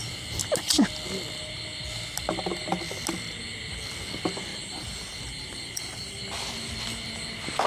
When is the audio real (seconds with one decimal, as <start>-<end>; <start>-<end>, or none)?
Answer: 0.0-4.5; 6.2-7.7